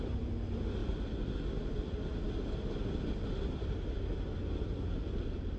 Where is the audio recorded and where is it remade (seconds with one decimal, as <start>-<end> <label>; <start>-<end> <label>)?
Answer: 0.0-5.6 recorded